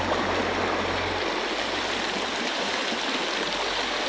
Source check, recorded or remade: recorded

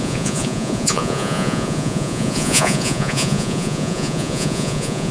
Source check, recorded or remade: remade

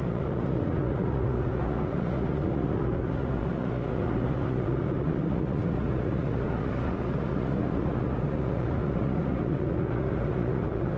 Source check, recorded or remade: remade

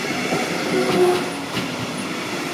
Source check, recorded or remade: recorded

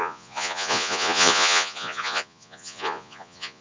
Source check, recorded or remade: remade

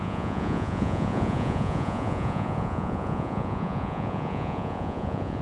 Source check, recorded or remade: remade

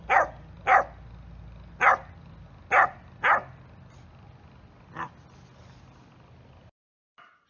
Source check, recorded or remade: recorded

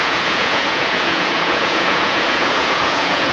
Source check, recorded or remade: remade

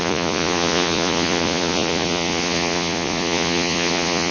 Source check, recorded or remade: remade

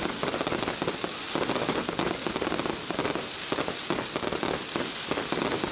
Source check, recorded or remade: recorded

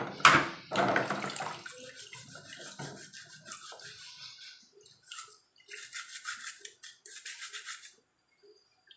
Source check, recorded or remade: recorded